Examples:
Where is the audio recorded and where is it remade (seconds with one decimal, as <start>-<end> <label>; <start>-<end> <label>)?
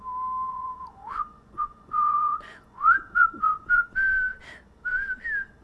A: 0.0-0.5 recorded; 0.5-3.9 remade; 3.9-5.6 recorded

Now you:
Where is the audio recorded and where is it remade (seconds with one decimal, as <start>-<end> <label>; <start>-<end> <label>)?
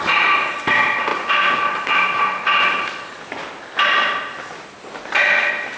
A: 0.0-5.8 recorded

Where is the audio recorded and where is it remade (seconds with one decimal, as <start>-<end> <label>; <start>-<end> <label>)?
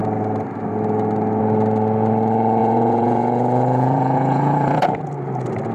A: 0.0-2.6 recorded; 2.6-5.0 remade; 5.0-5.7 recorded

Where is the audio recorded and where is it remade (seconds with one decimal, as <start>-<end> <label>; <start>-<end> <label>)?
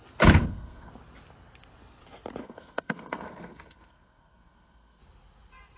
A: 0.0-0.4 recorded; 0.4-0.9 remade; 0.9-2.4 recorded; 2.4-5.0 remade; 5.0-5.8 recorded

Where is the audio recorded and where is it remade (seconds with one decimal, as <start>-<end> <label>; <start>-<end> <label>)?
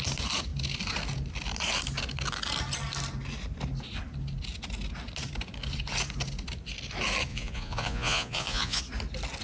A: 0.0-7.3 recorded; 7.3-8.8 remade; 8.8-9.4 recorded